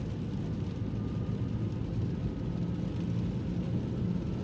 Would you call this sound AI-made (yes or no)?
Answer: no